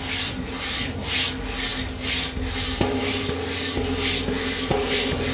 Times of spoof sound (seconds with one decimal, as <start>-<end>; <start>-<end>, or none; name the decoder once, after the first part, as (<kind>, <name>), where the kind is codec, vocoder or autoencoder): none